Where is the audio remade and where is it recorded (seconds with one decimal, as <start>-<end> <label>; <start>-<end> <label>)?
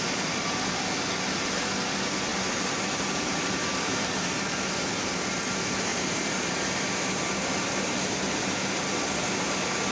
0.0-2.3 recorded; 2.3-4.1 remade; 4.1-5.9 recorded; 5.9-8.4 remade; 8.4-9.9 recorded